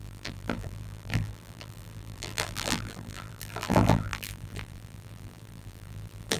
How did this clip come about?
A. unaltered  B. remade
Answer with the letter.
B